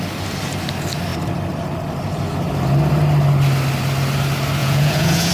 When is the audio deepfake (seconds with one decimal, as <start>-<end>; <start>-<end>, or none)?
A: 4.6-5.3